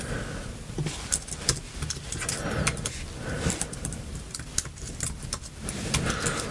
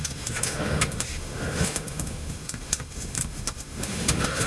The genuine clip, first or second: first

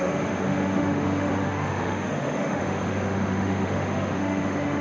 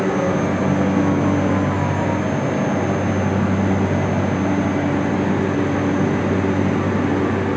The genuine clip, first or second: second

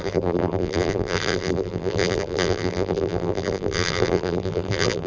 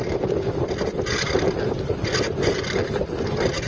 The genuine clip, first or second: second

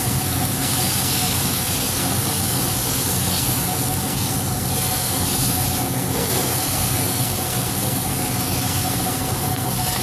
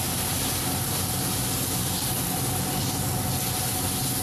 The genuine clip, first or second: second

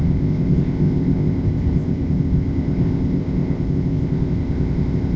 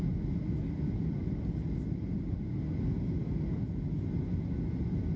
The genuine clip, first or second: second